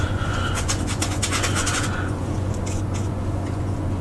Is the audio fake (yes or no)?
yes